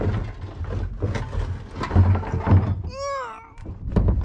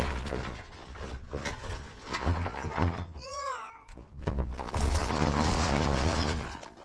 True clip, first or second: first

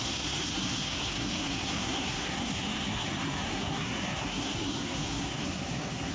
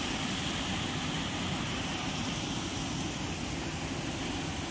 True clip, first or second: second